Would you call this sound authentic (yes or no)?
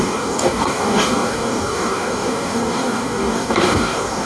no